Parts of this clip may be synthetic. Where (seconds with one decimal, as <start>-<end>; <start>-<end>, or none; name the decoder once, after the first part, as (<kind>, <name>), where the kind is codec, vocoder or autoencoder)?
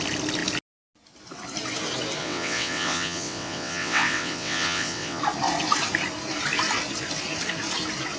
2.2-5.2 (vocoder, WaveNeXt)